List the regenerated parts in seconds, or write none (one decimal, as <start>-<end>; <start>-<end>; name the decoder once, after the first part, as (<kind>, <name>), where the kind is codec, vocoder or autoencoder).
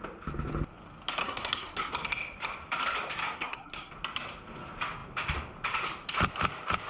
1.2-1.9 (codec, SNAC); 3.2-3.9